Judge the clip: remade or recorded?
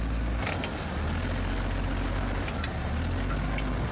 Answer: recorded